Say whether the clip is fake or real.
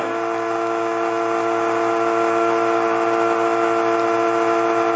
real